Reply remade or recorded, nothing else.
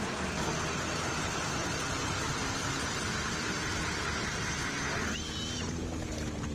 recorded